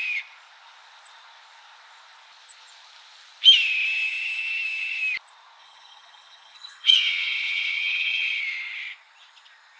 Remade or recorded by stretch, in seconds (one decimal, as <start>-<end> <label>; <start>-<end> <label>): 0.0-5.6 recorded; 5.6-8.4 remade; 8.4-9.8 recorded